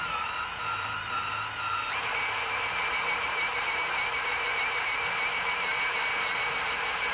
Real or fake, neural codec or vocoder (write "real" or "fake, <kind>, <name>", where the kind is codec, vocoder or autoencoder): fake, vocoder, BigVGAN v2